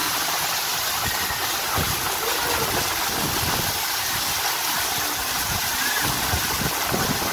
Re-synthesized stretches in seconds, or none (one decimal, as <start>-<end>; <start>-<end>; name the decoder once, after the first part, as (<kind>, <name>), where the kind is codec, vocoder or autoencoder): 0.0-0.8 (vocoder, BigVGAN v2); 1.4-2.0; 5.2-6.0